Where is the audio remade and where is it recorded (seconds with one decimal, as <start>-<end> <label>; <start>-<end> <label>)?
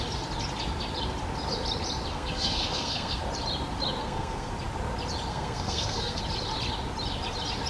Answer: 0.0-2.1 recorded; 2.1-3.2 remade; 3.2-4.0 recorded; 4.0-4.5 remade; 4.5-5.3 recorded; 5.3-6.2 remade; 6.2-7.7 recorded